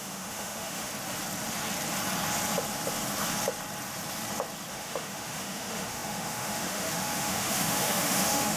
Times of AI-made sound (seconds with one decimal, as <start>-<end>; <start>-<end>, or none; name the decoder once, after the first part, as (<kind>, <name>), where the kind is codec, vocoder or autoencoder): 0.0-0.9 (autoencoder, DAC-VAE); 4.7-8.6